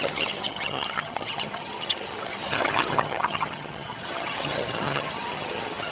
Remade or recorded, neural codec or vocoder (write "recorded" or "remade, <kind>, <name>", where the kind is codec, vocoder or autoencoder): remade, vocoder, HiFi-GAN